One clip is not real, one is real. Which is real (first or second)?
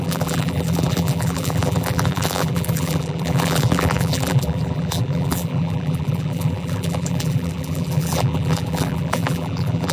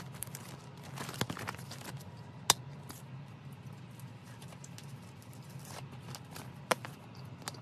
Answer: second